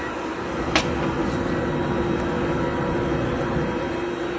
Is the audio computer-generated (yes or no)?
no